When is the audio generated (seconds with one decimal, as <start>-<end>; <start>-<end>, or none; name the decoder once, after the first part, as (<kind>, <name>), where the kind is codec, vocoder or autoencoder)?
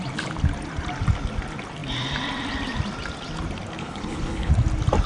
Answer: 3.8-4.5 (codec, HILCodec)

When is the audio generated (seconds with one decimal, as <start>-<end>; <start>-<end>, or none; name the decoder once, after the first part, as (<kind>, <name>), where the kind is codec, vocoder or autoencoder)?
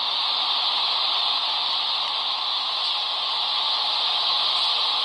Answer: none